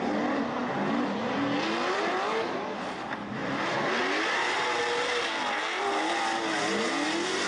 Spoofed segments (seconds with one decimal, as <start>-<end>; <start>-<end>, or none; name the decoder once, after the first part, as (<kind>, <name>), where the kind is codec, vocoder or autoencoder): none